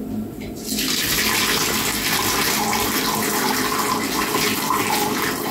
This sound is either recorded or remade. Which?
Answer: recorded